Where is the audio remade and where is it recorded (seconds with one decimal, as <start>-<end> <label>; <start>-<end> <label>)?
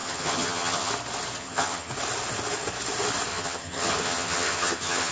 0.0-0.9 remade; 0.9-1.4 recorded; 1.4-1.9 remade; 1.9-3.3 recorded; 3.3-5.1 remade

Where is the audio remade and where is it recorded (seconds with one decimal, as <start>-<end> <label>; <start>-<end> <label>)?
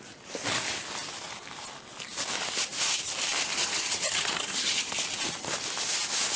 0.0-3.6 recorded; 3.6-4.9 remade; 4.9-6.4 recorded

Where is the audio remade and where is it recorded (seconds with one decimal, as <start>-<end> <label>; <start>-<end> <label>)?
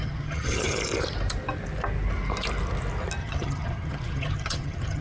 0.0-0.8 remade; 0.8-3.2 recorded; 3.2-5.0 remade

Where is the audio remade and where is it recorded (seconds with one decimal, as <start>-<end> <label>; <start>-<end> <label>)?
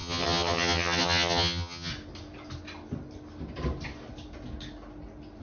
0.0-1.9 remade; 1.9-5.4 recorded